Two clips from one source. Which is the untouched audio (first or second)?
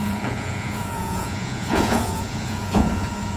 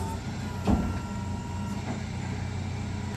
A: second